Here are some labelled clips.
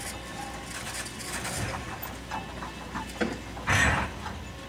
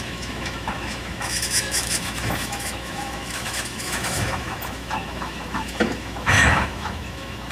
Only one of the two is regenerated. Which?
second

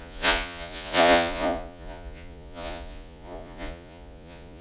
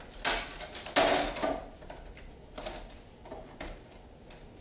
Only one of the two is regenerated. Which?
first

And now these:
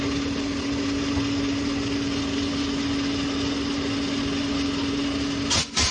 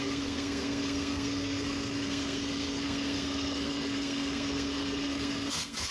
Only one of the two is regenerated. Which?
second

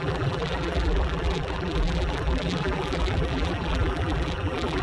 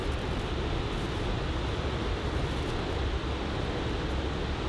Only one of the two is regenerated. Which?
first